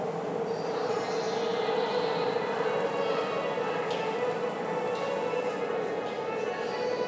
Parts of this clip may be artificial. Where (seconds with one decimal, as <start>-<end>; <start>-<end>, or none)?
none